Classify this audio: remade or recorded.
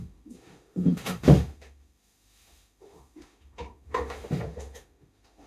remade